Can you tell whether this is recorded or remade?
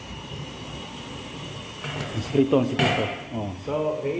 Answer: recorded